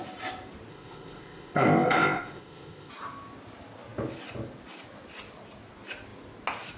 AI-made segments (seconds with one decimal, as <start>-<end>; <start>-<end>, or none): 0.7-2.9